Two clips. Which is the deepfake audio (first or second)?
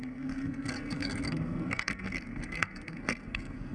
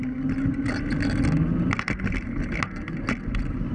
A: first